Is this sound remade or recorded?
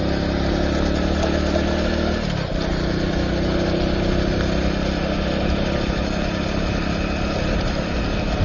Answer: recorded